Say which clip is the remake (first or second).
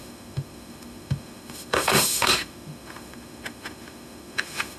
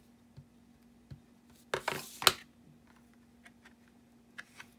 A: first